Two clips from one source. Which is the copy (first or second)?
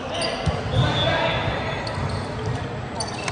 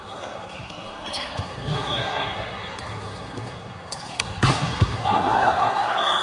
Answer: second